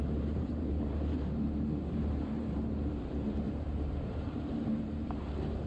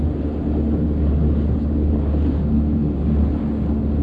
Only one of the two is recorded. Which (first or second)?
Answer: second